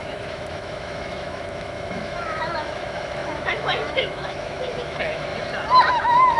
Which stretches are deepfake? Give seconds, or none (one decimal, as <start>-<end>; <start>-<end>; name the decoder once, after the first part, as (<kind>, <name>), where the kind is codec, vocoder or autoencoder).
0.0-5.3 (autoencoder, DAC-VAE); 5.9-6.4